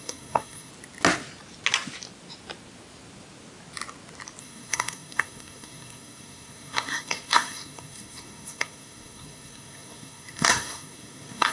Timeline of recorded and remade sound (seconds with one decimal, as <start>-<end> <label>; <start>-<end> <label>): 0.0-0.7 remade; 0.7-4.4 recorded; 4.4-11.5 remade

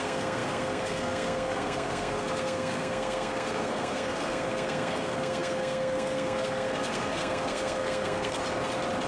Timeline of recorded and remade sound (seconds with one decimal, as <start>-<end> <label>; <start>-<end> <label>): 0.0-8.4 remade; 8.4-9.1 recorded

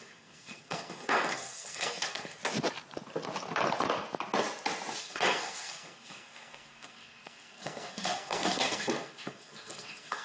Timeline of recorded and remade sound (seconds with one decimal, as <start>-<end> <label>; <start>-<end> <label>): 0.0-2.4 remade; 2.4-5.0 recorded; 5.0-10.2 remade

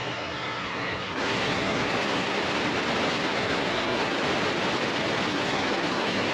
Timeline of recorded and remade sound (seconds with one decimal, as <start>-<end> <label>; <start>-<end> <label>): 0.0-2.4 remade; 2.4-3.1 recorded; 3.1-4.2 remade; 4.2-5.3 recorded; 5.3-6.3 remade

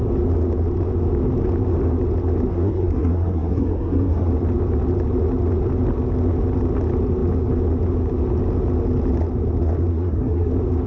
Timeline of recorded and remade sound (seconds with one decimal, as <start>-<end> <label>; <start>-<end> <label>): 0.0-2.5 recorded; 2.5-4.3 remade; 4.3-9.9 recorded; 9.9-10.5 remade; 10.5-10.9 recorded

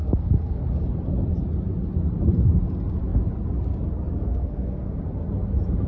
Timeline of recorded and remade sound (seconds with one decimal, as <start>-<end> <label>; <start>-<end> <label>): 0.0-0.6 remade; 0.6-4.2 recorded; 4.2-4.9 remade; 4.9-5.9 recorded

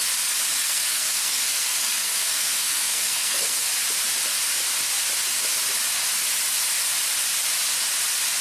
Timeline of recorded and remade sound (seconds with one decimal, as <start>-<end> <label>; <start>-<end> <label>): 0.0-0.5 recorded; 0.5-3.7 remade; 3.7-8.4 recorded

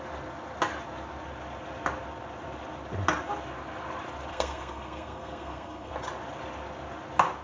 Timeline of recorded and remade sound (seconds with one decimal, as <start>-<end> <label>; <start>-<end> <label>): 0.0-4.3 recorded; 4.3-5.9 remade; 5.9-7.4 recorded